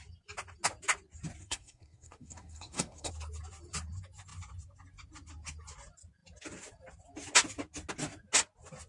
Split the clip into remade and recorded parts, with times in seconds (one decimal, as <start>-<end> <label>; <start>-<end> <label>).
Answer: 0.0-1.4 recorded; 1.4-3.1 remade; 3.1-8.9 recorded